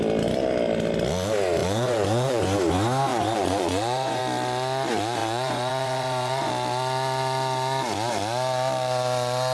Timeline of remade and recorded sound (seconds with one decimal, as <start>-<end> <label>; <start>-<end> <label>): 0.0-1.6 recorded; 1.6-2.4 remade; 2.4-3.1 recorded; 3.1-4.2 remade; 4.2-5.2 recorded; 5.2-6.5 remade; 6.5-9.5 recorded